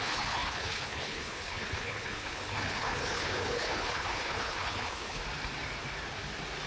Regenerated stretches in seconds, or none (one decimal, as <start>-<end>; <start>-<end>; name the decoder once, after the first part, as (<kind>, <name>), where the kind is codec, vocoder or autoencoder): 0.0-5.2 (codec, HILCodec)